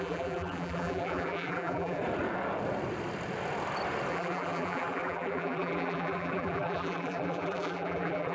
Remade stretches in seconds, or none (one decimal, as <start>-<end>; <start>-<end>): 0.0-2.0; 4.1-8.3